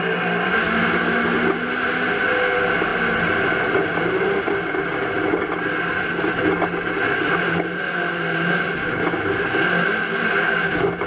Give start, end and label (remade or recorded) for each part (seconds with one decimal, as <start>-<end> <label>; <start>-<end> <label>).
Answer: 0.0-11.1 recorded